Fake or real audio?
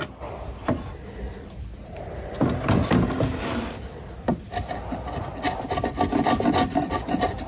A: real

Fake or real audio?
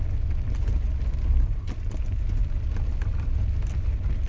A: real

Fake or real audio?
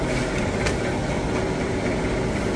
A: real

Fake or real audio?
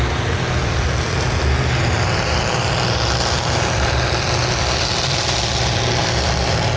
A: fake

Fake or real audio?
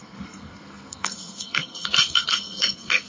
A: fake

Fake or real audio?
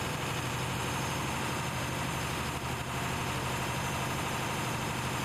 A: real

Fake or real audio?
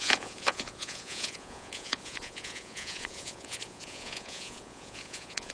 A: fake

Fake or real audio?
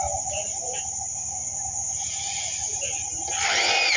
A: real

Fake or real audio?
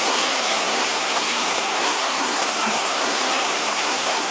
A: fake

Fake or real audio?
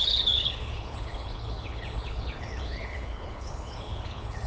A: fake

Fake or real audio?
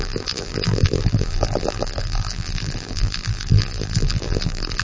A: fake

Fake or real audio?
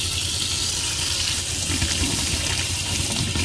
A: real